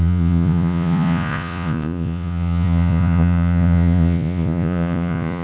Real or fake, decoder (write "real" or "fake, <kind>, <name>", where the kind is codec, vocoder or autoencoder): fake, vocoder, Vocos